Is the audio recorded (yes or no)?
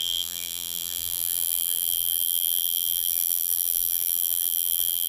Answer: no